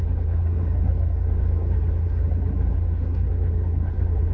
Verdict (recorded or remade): remade